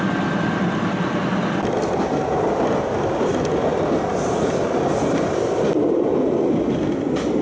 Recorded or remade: recorded